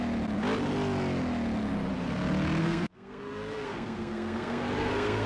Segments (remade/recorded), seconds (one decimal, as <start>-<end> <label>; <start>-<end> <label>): 0.0-2.6 recorded; 2.6-5.3 remade